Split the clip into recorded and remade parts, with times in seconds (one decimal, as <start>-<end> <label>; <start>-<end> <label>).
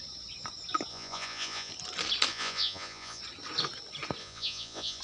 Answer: 0.0-0.9 recorded; 0.9-1.7 remade; 1.7-2.3 recorded; 2.3-3.2 remade; 3.2-4.2 recorded; 4.2-5.0 remade